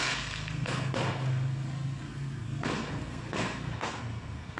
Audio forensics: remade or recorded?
remade